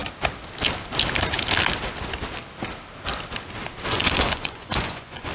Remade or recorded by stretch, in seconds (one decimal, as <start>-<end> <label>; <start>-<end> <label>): 0.0-3.9 recorded; 3.9-5.3 remade